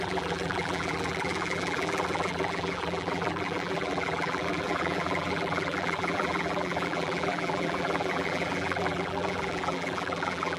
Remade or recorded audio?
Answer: remade